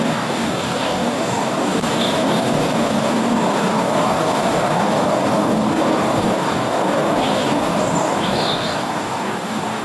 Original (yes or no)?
no